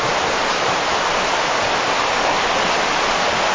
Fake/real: real